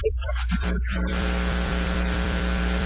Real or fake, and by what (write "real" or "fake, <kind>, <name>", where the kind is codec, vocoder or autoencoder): fake, vocoder, BigVGAN v2